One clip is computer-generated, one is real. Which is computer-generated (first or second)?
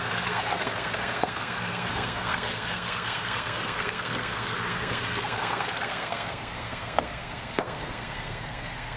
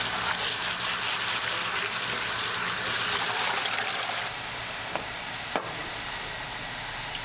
first